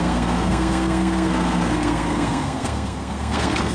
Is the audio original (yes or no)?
no